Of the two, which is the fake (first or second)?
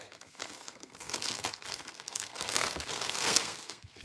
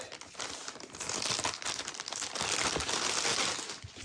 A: first